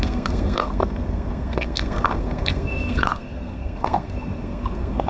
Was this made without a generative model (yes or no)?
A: no